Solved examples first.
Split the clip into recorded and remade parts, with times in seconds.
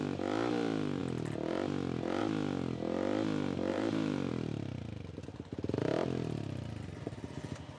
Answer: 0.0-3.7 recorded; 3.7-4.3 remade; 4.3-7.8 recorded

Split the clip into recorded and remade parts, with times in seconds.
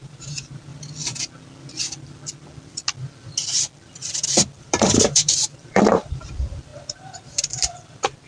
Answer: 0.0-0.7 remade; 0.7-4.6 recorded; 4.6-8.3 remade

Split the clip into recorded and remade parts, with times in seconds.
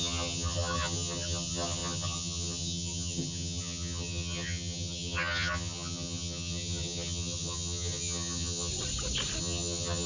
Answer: 0.0-8.7 remade; 8.7-9.4 recorded; 9.4-10.1 remade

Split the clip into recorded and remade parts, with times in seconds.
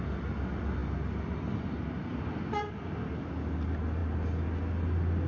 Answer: 0.0-5.3 recorded